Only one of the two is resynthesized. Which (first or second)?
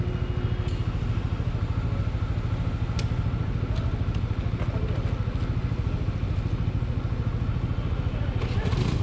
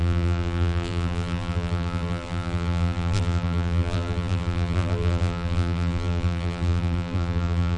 second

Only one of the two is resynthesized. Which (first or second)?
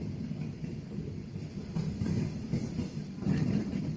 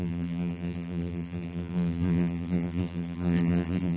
second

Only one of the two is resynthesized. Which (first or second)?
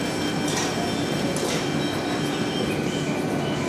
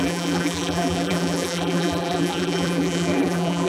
second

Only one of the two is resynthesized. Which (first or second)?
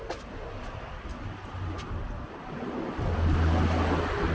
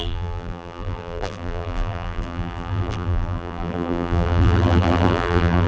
second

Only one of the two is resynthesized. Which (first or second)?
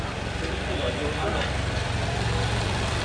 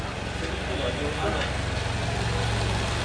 first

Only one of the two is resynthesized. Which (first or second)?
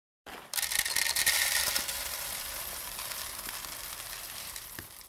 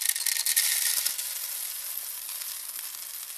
first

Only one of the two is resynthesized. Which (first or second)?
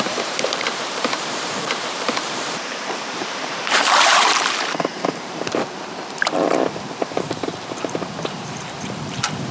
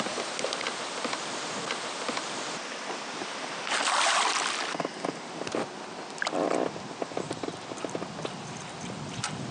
first